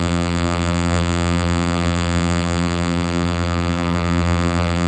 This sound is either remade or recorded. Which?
remade